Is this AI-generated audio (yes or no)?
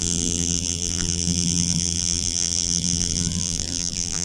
yes